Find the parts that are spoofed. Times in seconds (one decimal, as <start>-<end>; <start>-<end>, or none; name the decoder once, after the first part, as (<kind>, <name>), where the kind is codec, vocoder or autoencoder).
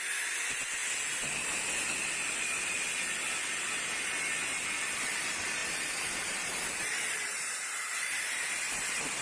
5.6-9.2 (vocoder, BigVGAN v2)